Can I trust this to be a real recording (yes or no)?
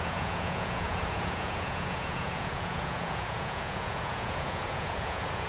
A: no